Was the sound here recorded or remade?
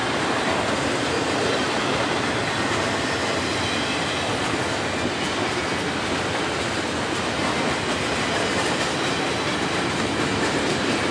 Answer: recorded